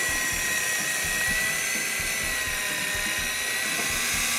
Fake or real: real